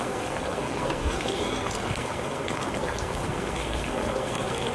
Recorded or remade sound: remade